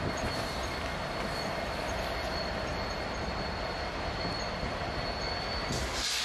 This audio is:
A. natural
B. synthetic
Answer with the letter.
A